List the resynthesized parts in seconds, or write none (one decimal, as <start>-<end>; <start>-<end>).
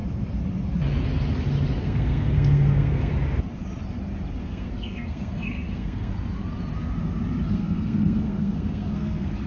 1.8-3.1; 4.4-6.1; 7.5-9.5